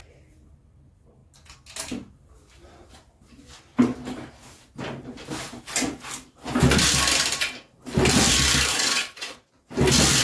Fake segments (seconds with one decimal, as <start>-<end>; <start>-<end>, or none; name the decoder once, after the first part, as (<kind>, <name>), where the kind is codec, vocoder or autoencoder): 8.7-9.5 (vocoder, Vocos)